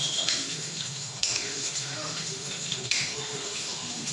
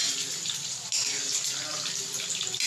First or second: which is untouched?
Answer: second